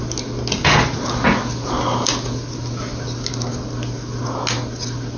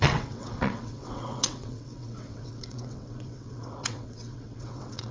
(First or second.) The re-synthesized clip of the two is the second